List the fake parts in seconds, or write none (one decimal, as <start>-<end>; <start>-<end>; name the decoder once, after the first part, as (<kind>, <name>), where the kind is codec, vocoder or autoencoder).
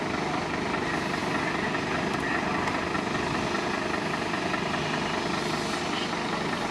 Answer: none